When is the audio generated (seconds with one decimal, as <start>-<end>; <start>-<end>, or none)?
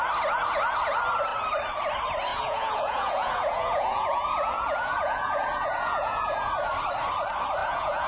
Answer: 2.3-6.5; 7.6-8.1